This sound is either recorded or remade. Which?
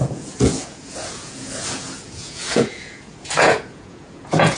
remade